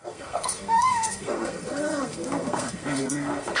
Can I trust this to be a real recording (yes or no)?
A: no